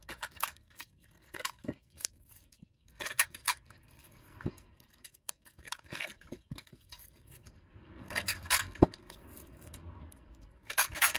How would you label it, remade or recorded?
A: remade